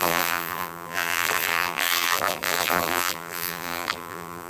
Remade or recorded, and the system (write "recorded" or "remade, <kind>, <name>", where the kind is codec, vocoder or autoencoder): remade, vocoder, BigVGAN v2